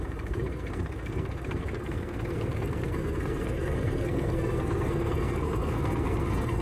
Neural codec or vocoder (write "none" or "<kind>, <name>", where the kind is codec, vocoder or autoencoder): codec, SNAC